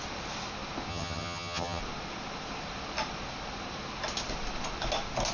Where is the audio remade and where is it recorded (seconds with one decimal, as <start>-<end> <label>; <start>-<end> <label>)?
0.0-0.9 recorded; 0.9-1.8 remade; 1.8-5.3 recorded